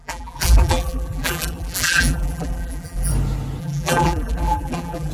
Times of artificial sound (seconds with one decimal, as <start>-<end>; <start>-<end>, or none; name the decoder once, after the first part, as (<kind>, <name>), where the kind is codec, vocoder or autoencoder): 0.0-3.1 (vocoder, BigVGAN v2); 3.6-5.1